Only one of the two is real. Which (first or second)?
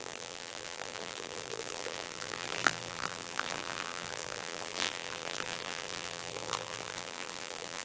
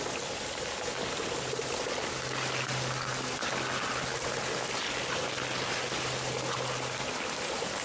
second